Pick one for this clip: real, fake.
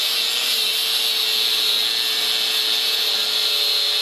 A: real